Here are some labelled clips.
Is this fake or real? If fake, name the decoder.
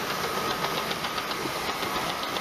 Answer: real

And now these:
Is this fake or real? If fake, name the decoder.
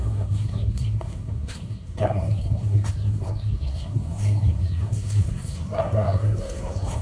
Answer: fake, codec, SNAC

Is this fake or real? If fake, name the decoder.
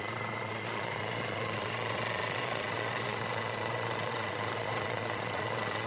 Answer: fake, vocoder, Vocos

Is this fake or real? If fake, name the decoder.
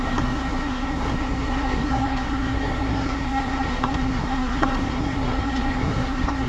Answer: fake, codec, SNAC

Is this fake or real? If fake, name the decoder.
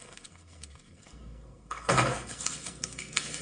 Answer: fake, codec, SNAC